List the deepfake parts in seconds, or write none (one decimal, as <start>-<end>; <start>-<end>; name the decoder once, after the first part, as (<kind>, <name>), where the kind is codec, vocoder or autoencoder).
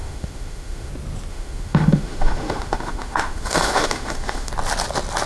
0.0-0.9 (autoencoder, DAC-VAE); 1.3-4.5